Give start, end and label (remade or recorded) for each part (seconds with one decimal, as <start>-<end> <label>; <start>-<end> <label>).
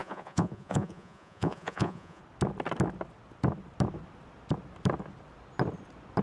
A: 0.0-2.2 remade; 2.2-6.2 recorded